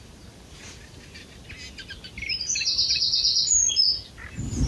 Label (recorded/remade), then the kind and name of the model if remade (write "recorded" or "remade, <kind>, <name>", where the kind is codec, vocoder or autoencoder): recorded